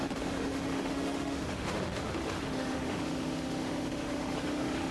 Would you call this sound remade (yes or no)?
yes